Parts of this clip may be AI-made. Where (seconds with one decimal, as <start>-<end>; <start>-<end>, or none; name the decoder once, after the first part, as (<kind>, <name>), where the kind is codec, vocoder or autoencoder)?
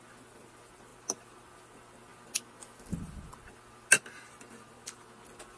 none